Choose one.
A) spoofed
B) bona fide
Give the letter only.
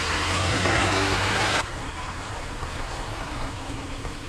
A